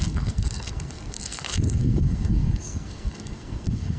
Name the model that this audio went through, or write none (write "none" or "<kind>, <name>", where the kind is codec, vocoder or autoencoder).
codec, SNAC